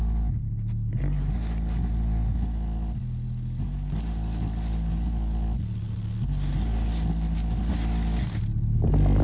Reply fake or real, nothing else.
real